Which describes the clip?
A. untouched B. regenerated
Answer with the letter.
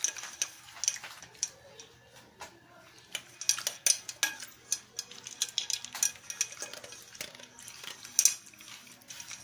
A